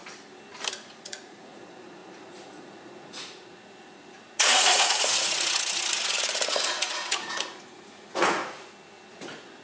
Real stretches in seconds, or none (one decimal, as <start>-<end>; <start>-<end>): 0.0-0.7; 8.4-9.1

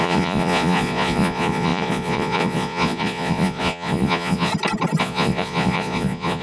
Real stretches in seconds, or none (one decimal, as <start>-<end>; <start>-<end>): 4.5-5.0

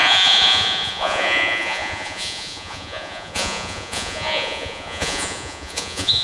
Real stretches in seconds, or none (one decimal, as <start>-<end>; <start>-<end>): none